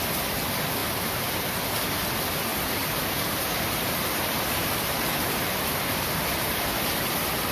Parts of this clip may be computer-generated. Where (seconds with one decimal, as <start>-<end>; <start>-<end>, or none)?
2.5-6.7